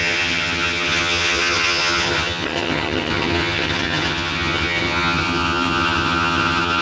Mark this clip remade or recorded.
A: remade